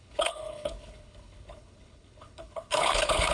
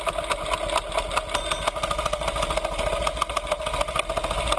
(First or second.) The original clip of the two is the second